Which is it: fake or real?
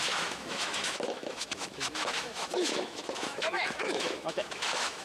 fake